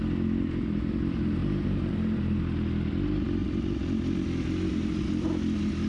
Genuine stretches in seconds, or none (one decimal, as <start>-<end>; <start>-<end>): 0.0-1.4; 2.4-5.9